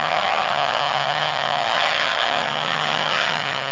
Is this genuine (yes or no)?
no